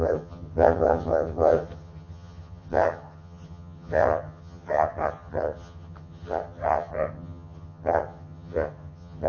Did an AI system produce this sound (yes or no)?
yes